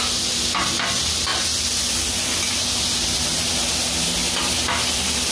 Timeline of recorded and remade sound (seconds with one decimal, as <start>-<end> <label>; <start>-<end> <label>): 0.0-5.3 recorded